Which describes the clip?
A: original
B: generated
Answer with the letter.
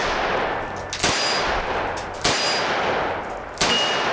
A